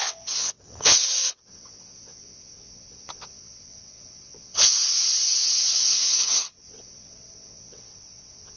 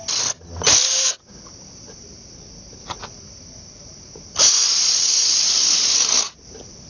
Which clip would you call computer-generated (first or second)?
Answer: first